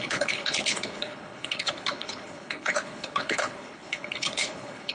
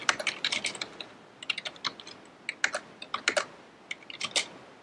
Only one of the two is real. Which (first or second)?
second